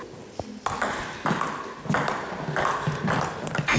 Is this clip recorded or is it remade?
recorded